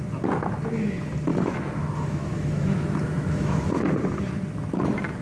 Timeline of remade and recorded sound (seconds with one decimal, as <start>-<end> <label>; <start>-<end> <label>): 0.0-1.3 recorded; 1.3-3.7 remade; 3.7-5.2 recorded